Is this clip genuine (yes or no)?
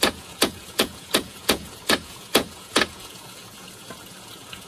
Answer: no